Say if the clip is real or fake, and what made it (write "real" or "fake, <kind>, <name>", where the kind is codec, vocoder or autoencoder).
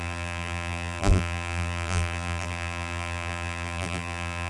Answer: fake, vocoder, BigVGAN v2